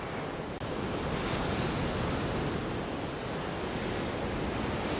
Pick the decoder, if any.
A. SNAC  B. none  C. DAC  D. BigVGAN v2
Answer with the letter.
B